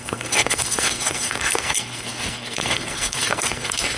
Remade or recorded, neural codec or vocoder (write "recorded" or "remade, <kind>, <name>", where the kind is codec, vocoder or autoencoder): remade, codec, SNAC